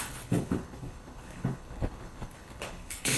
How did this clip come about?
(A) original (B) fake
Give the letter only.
B